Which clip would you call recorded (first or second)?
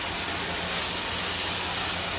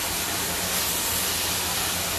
first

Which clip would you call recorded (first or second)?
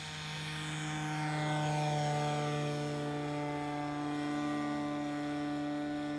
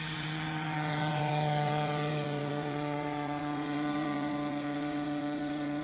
first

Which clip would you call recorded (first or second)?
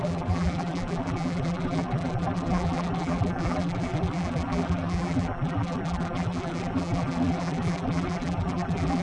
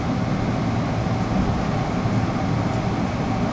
second